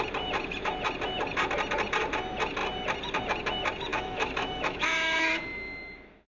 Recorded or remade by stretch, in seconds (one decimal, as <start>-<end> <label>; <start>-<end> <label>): 0.0-3.9 recorded; 3.9-6.3 remade